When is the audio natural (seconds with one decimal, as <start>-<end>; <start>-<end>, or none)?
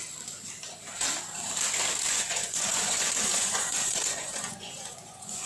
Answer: 0.0-2.1